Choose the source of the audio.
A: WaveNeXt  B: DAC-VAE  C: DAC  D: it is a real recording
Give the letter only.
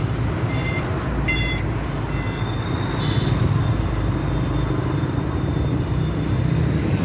D